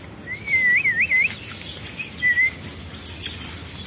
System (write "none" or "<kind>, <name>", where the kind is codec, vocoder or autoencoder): none